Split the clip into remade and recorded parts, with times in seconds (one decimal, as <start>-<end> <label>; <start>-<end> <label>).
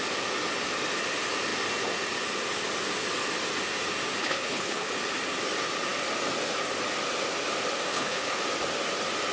0.0-4.2 recorded; 4.2-4.9 remade; 4.9-7.9 recorded; 7.9-8.4 remade; 8.4-9.3 recorded